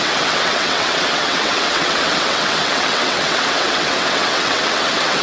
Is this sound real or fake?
fake